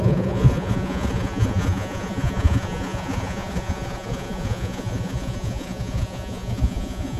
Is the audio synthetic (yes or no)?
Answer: yes